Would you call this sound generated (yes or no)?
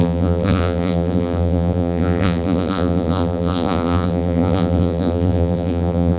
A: yes